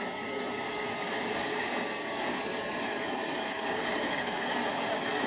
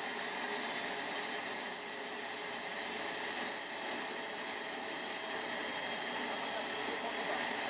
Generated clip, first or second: first